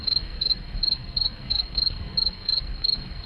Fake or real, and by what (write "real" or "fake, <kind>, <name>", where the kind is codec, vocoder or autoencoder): fake, codec, SNAC